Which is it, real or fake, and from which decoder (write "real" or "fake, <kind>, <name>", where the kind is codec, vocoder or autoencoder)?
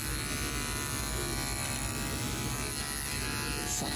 real